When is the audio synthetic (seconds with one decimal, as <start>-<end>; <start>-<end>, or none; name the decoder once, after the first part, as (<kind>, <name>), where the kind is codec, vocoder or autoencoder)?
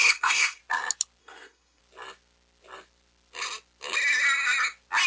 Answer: 0.0-0.6 (codec, SNAC); 1.2-1.8